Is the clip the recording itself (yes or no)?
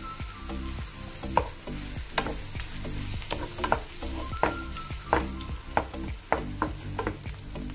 yes